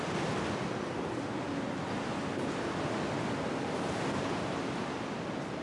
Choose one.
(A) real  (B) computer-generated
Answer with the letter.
A